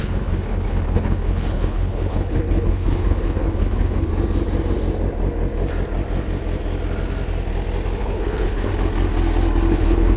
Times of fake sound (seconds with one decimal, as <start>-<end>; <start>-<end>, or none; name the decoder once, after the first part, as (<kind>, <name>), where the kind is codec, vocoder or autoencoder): 0.0-4.1 (codec, HILCodec); 8.0-8.7; 9.7-10.2